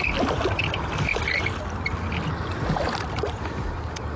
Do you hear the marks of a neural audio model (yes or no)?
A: no